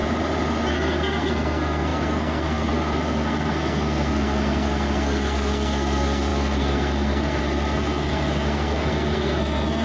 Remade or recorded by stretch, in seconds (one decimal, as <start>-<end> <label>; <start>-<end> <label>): 0.0-0.7 recorded; 0.7-9.8 remade